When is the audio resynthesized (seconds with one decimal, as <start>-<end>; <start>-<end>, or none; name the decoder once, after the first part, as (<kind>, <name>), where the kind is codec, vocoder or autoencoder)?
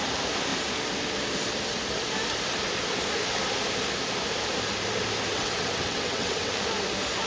5.3-6.5 (vocoder, WaveNeXt)